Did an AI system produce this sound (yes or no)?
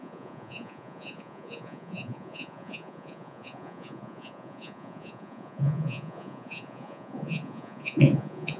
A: yes